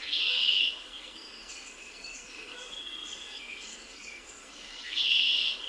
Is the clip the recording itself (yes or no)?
no